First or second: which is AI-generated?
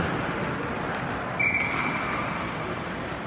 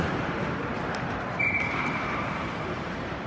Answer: second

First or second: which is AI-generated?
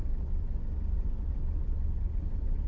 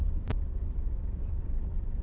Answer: second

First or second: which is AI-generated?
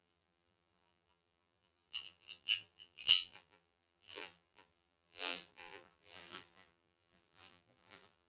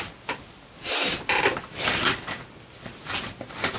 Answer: first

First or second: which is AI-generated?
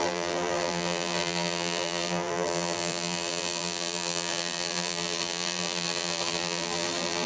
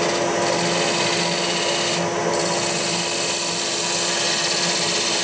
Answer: first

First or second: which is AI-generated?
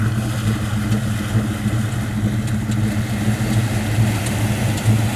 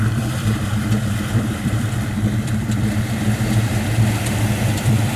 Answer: second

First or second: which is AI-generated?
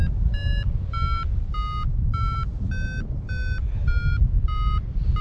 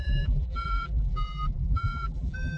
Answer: second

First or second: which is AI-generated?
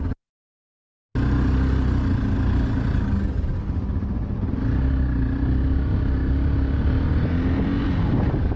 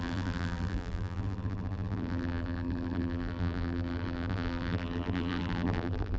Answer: second